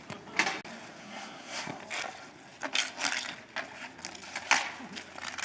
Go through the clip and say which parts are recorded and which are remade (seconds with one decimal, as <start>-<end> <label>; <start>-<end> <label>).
0.0-1.0 recorded; 1.0-1.8 remade; 1.8-5.4 recorded